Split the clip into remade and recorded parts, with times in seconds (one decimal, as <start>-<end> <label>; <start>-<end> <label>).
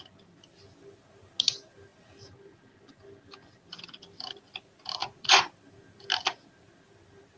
0.0-5.0 recorded; 5.0-5.5 remade; 5.5-7.4 recorded